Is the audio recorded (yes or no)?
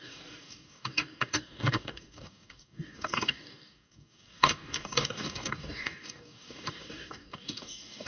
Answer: no